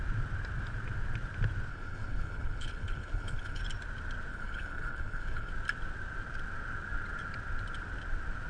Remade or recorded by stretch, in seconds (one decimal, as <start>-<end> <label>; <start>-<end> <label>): 0.0-1.7 recorded; 1.7-3.6 remade; 3.6-4.3 recorded; 4.3-5.5 remade; 5.5-8.5 recorded